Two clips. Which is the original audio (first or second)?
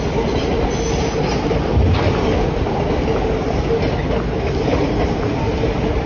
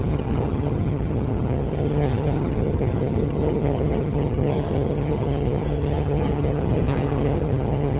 first